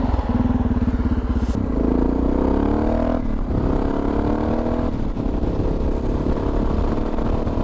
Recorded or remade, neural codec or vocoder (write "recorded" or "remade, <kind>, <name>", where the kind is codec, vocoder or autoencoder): recorded